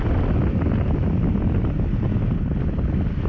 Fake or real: real